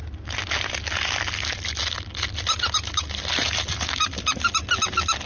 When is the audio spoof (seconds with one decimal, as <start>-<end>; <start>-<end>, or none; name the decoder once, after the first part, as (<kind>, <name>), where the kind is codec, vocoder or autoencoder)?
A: none